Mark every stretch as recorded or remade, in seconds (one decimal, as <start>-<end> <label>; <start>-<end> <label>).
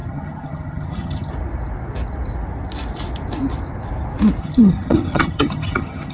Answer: 0.0-1.3 remade; 1.3-4.4 recorded; 4.4-6.1 remade